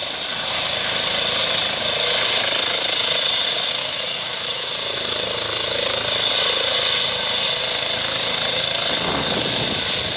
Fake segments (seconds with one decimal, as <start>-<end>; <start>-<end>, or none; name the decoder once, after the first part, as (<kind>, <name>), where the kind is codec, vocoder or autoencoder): 3.8-4.7 (autoencoder, DAC-VAE)